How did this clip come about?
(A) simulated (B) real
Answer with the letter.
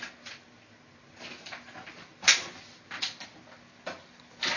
B